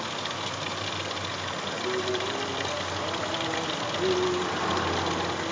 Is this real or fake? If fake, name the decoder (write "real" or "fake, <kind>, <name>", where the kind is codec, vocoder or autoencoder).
real